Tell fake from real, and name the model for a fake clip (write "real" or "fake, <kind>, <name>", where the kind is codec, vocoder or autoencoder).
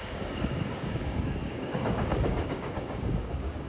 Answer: fake, codec, DAC